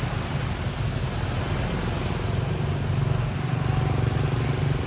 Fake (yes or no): no